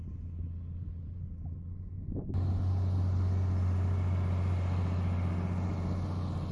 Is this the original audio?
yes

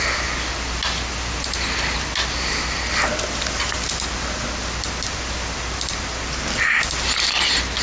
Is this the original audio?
yes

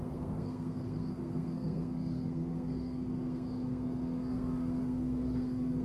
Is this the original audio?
no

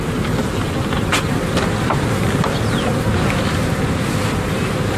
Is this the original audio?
yes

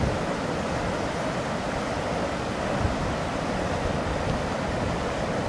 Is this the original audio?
yes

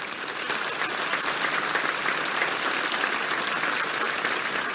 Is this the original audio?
yes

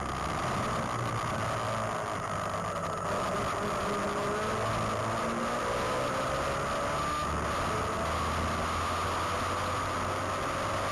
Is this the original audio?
yes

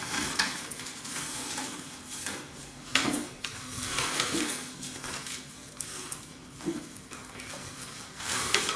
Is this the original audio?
no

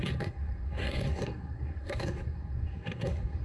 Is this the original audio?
no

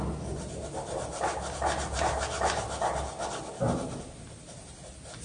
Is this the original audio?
yes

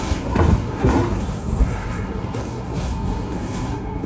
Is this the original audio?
no